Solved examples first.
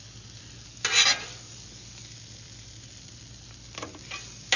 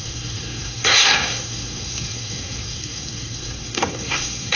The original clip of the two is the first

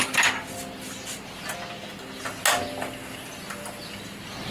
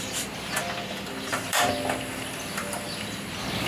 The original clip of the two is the first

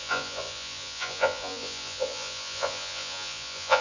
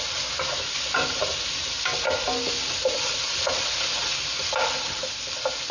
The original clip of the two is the second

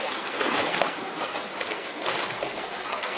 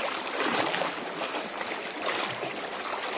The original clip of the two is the second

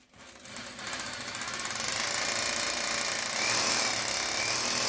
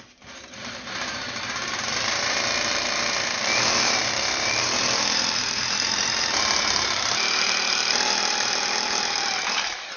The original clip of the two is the first